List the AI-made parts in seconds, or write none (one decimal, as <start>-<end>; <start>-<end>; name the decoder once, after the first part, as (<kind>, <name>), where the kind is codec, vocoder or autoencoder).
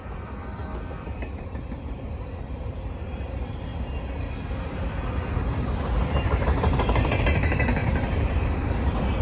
0.0-0.6 (vocoder, BigVGAN v2); 1.2-3.7; 7.2-9.2